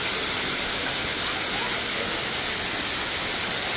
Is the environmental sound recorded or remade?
recorded